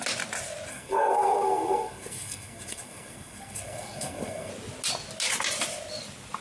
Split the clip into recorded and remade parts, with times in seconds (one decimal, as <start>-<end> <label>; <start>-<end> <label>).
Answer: 0.0-0.7 recorded; 0.7-4.5 remade; 4.5-6.4 recorded